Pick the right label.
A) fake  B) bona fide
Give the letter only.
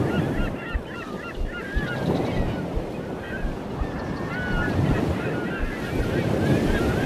B